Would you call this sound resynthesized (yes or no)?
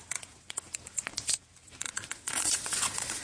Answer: yes